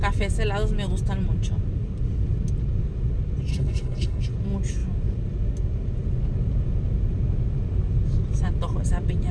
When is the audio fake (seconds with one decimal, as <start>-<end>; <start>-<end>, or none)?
3.5-4.2